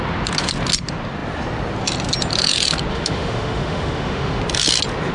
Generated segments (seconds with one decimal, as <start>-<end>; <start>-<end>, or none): 2.9-4.4